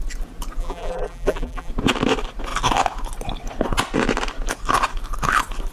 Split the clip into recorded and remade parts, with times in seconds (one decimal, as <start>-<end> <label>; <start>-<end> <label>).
0.0-0.6 recorded; 0.6-1.7 remade; 1.7-5.7 recorded